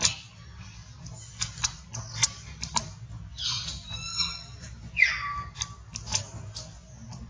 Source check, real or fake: real